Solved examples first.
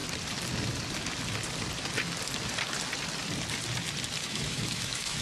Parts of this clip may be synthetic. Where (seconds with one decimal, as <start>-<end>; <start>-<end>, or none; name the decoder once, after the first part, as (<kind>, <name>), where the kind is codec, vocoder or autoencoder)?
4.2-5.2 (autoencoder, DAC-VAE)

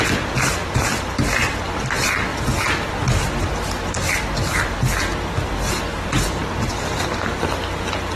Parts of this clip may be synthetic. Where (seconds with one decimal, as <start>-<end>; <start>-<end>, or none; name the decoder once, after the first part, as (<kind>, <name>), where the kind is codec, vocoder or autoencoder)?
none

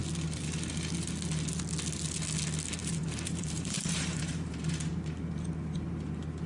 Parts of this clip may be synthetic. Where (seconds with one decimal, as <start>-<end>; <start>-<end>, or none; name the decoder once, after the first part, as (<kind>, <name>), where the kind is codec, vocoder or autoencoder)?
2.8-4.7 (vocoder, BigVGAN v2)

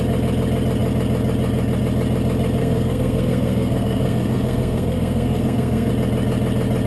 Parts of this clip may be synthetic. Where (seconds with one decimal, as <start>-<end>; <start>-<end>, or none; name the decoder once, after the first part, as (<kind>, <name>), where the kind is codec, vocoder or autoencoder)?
2.6-5.9 (codec, SNAC)